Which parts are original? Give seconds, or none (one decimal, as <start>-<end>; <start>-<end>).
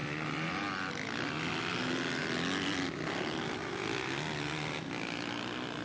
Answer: 0.0-5.8